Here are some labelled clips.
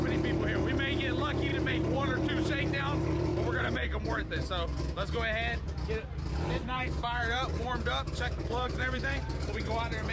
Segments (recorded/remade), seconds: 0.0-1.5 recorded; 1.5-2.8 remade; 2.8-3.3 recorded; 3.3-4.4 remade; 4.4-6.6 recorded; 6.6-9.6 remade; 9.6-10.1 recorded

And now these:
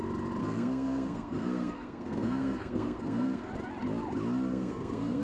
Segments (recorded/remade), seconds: 0.0-0.4 recorded; 0.4-3.5 remade; 3.5-4.5 recorded; 4.5-5.2 remade